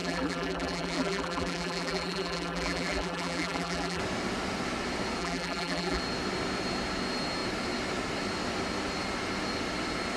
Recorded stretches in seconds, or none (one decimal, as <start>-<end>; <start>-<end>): 4.0-5.2; 6.0-10.2

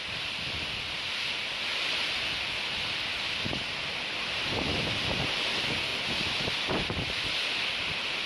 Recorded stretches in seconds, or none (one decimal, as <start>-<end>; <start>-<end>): 0.0-3.1; 4.7-8.3

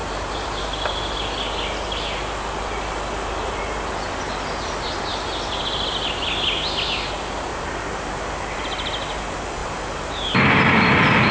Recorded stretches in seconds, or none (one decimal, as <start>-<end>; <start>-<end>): 0.6-7.5; 8.2-9.6; 10.3-11.3

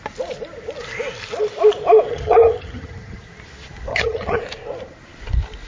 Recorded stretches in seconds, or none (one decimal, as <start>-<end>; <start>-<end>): 0.0-2.1; 3.2-3.9; 4.4-5.7